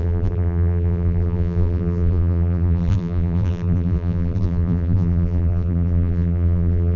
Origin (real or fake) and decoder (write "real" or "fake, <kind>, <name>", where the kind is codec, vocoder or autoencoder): fake, vocoder, BigVGAN v2